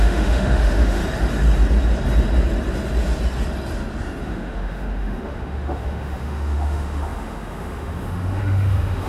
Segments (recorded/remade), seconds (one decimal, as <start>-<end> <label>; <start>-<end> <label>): 0.0-1.0 remade; 1.0-4.2 recorded; 4.2-9.1 remade